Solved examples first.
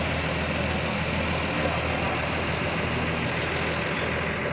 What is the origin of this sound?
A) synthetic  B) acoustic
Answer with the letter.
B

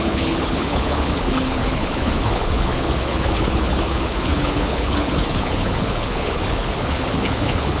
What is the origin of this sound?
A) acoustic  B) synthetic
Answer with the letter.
B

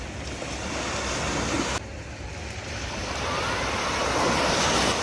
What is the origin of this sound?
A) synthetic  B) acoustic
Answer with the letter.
B